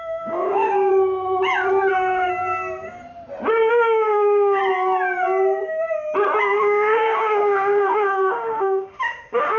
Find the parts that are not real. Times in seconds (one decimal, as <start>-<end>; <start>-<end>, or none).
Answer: 0.0-0.9; 1.9-2.3; 3.7-4.6; 6.4-9.6